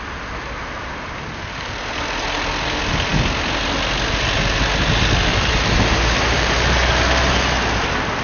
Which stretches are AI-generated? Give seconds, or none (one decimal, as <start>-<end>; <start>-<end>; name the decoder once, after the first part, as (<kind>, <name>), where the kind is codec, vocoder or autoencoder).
5.3-6.9 (vocoder, BigVGAN v2)